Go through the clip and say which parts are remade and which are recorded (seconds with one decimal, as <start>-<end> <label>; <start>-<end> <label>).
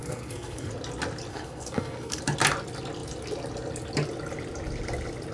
0.0-0.7 remade; 0.7-1.3 recorded; 1.3-2.2 remade; 2.2-5.3 recorded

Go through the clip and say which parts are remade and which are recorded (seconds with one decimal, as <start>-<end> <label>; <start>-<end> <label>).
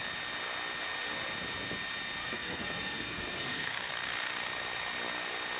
0.0-2.2 recorded; 2.2-3.9 remade; 3.9-5.6 recorded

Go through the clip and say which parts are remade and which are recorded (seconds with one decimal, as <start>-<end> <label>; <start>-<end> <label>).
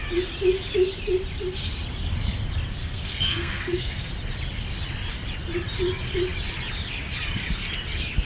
0.0-2.8 recorded; 2.8-4.1 remade; 4.1-8.2 recorded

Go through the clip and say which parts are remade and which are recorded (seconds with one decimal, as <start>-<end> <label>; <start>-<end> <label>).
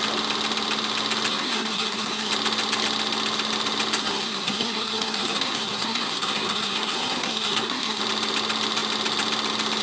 0.0-1.3 recorded; 1.3-2.3 remade; 2.3-4.0 recorded; 4.0-8.0 remade; 8.0-9.8 recorded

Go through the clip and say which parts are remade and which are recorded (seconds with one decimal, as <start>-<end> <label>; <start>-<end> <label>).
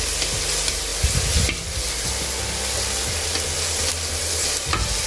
0.0-5.1 recorded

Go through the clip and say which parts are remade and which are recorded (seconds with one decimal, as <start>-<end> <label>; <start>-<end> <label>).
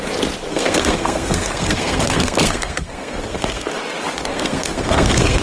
0.0-0.5 recorded; 0.5-3.7 remade; 3.7-4.3 recorded; 4.3-5.4 remade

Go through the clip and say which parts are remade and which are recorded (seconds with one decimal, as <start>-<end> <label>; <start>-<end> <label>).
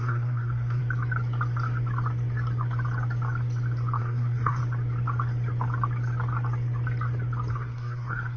0.0-0.8 remade; 0.8-4.0 recorded; 4.0-4.6 remade; 4.6-7.5 recorded; 7.5-8.4 remade